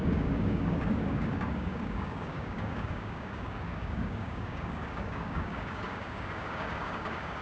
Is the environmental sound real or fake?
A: fake